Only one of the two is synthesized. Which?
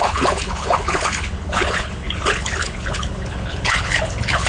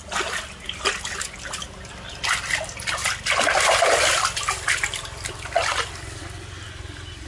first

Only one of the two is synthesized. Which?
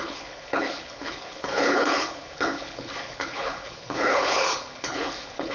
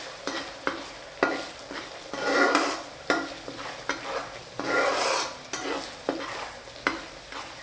first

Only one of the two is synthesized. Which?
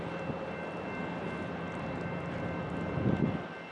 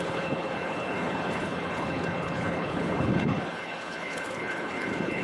second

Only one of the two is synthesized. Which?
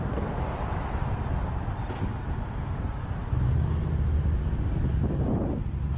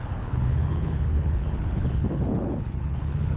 second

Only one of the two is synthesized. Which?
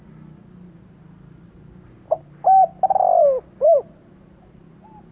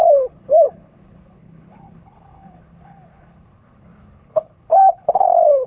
second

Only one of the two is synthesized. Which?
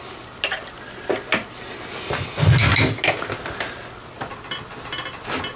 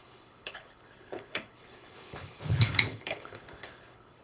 second